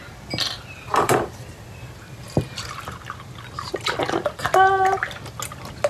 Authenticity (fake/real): real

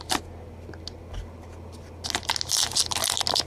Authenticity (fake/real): real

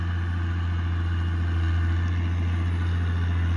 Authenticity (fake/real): real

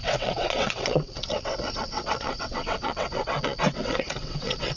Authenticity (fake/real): fake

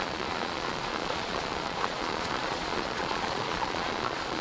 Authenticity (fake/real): fake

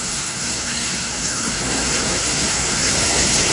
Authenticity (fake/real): fake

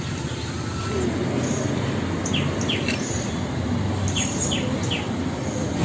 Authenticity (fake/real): real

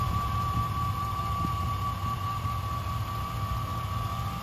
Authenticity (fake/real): real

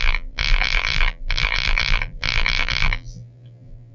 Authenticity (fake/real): fake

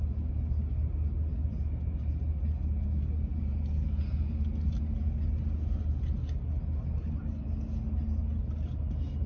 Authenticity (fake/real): real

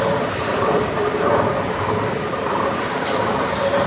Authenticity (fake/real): fake